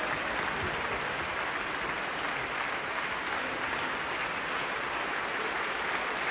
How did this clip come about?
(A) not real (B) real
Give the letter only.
B